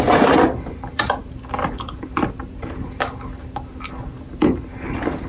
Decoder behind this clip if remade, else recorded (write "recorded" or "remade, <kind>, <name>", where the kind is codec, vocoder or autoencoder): recorded